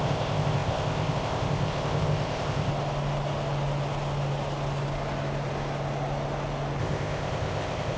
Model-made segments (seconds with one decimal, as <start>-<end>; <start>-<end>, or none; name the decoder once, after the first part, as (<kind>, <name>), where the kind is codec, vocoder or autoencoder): 0.0-2.7 (codec, ZipCodec); 6.8-8.0